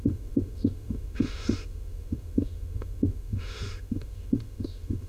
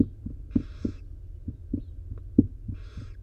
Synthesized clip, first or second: first